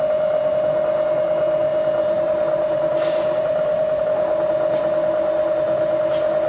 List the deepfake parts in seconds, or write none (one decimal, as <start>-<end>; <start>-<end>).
1.7-4.0